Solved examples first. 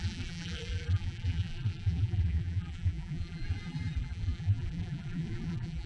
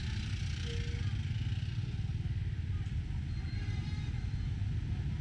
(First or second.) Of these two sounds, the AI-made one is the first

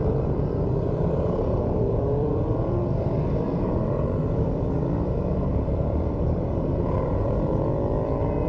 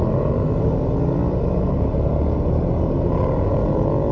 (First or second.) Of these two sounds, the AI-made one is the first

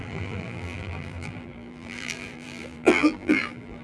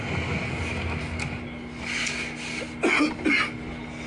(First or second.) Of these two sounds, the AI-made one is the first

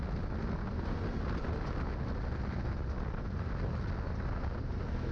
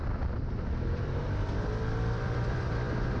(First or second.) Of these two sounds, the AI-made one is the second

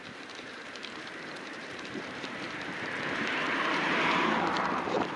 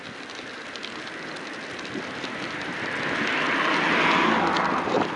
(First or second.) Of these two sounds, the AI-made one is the first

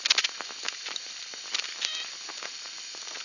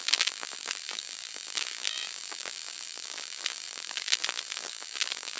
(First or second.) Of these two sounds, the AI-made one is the second